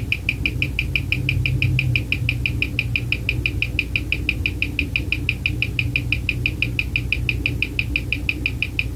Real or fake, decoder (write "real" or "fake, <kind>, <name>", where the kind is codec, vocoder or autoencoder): real